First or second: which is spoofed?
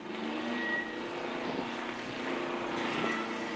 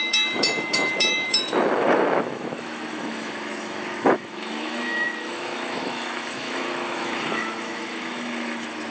second